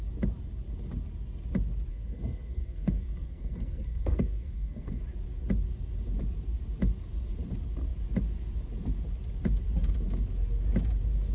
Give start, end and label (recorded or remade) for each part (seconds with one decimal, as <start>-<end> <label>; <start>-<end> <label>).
0.0-1.9 recorded; 1.9-5.0 remade; 5.0-11.3 recorded